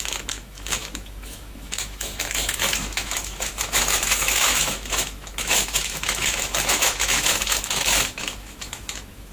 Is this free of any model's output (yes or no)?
no